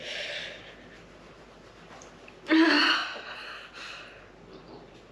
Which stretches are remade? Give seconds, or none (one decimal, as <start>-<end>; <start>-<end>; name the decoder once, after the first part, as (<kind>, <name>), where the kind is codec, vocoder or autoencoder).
none

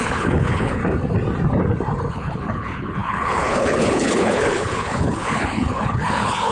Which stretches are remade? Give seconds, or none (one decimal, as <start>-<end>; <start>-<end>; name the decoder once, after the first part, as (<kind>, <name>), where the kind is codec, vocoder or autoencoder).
0.0-0.8 (codec, HILCodec); 2.1-6.5

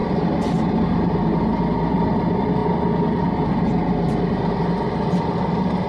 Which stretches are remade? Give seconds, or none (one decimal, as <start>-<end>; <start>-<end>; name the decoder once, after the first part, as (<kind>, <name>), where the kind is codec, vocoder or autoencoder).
none

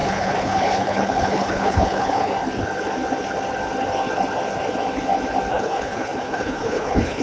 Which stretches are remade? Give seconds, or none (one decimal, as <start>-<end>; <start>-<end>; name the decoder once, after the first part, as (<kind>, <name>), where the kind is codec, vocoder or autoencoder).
0.0-2.3 (codec, HILCodec); 5.5-7.2

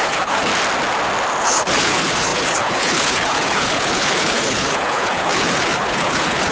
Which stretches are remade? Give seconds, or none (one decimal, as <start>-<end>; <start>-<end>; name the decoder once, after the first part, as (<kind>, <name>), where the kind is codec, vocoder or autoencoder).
0.0-0.5 (codec, HILCodec); 1.4-6.5

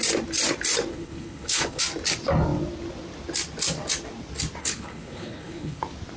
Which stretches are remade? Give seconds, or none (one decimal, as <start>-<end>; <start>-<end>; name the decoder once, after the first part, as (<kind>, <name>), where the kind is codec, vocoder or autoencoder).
0.9-1.8 (codec, HILCodec); 4.6-5.8

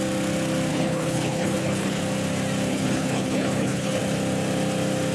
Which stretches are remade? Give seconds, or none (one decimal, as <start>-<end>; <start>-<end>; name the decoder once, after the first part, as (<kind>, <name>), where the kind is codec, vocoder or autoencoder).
0.7-2.0 (codec, HILCodec); 2.7-4.0